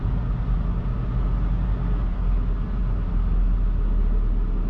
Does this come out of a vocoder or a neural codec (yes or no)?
no